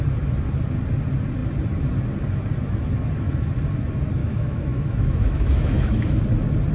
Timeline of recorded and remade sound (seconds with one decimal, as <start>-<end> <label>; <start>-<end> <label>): 0.0-4.2 recorded; 4.2-6.2 remade; 6.2-6.7 recorded